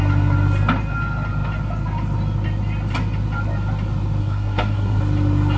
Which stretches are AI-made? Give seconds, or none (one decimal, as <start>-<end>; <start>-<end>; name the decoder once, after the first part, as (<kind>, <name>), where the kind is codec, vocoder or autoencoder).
4.2-5.0 (codec, SNAC)